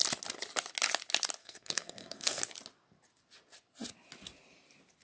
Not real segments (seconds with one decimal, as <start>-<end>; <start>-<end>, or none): 1.4-2.4